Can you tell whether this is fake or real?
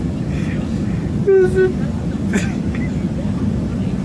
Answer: real